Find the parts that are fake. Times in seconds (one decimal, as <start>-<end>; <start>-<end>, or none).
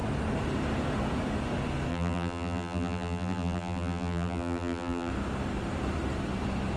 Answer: 1.9-5.1